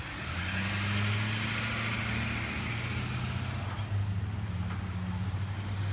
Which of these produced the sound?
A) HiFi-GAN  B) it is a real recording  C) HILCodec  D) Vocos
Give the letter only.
B